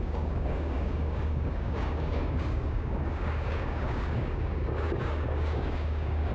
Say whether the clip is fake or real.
fake